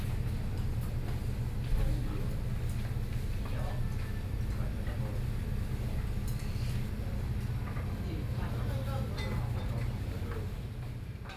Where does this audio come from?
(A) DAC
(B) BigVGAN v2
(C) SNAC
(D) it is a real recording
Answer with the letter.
D